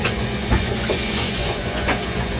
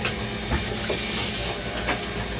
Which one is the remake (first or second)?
first